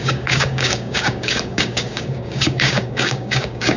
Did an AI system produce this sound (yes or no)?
yes